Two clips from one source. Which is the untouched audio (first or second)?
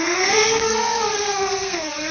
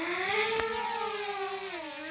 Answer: second